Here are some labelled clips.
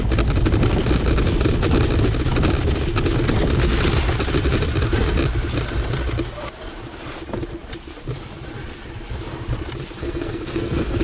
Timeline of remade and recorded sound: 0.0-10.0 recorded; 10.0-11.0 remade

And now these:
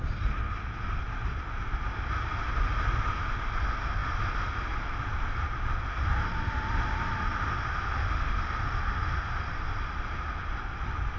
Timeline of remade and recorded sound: 0.0-11.2 recorded

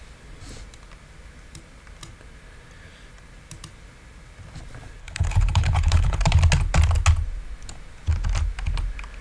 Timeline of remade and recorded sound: 0.0-5.0 recorded; 5.0-6.2 remade; 6.2-9.2 recorded

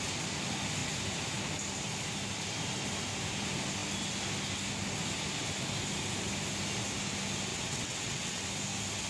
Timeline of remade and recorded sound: 0.0-7.5 recorded; 7.5-8.4 remade; 8.4-9.1 recorded

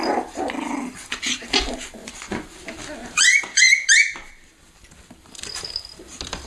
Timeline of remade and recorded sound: 0.0-2.0 recorded; 2.0-2.5 remade; 2.5-3.0 recorded; 3.0-3.6 remade; 3.6-6.5 recorded

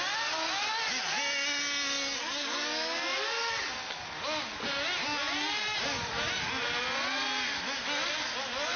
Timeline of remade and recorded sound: 0.0-8.8 recorded

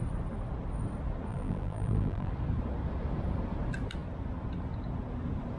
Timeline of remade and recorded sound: 0.0-1.3 recorded; 1.3-2.3 remade; 2.3-5.6 recorded

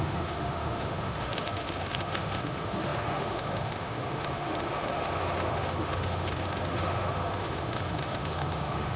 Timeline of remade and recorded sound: 0.0-9.0 remade